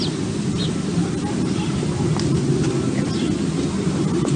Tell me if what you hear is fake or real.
real